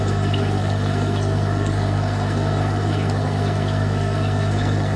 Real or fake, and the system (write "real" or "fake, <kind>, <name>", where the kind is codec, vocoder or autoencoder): fake, codec, SNAC